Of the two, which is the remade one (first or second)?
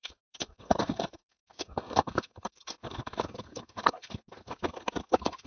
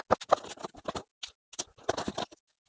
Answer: first